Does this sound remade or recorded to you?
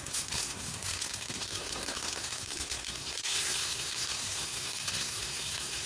remade